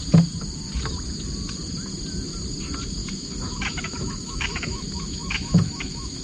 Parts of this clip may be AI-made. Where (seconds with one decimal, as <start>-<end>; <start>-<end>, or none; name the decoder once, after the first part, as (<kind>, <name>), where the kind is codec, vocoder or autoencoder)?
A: 3.0-6.2 (autoencoder, DAC-VAE)